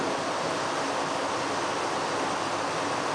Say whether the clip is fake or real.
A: real